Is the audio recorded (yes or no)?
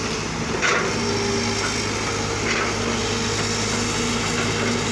yes